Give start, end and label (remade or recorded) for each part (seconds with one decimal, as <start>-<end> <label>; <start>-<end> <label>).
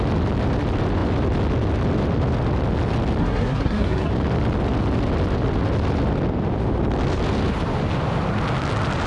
0.0-3.2 recorded; 3.2-4.1 remade; 4.1-9.1 recorded